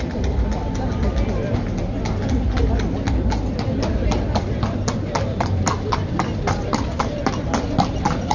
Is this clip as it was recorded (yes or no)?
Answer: yes